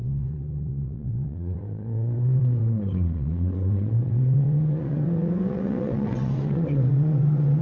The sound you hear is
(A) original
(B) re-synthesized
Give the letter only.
B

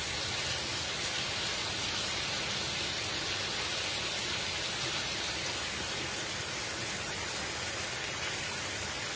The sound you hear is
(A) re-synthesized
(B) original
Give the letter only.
B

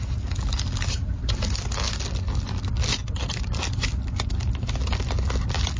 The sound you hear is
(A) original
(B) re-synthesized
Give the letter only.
A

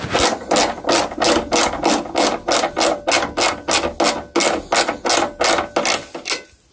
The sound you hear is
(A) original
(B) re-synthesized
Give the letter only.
A